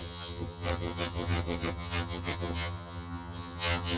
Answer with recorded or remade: remade